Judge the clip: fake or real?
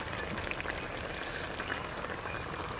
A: real